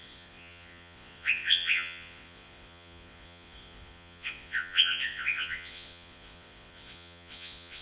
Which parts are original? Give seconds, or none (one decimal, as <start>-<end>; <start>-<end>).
none